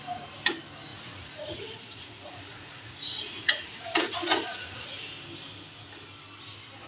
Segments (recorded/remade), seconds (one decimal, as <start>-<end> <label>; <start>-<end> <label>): 0.0-0.9 recorded; 0.9-5.0 remade; 5.0-6.9 recorded